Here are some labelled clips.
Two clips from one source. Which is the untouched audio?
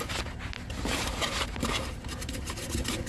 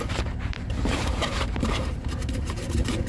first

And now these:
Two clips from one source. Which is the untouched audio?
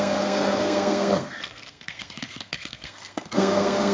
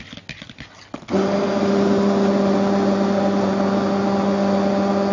second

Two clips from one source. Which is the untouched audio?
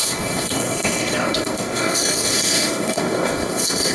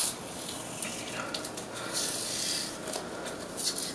second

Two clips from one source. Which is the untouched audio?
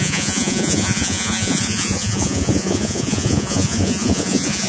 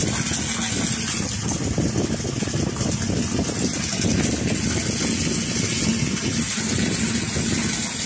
second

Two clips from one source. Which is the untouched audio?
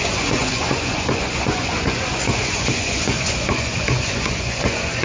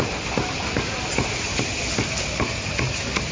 second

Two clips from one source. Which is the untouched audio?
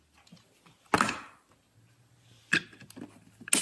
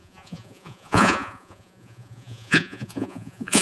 first